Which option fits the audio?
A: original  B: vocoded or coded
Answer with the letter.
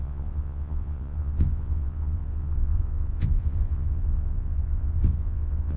B